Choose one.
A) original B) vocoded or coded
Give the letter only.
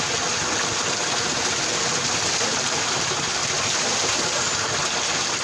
A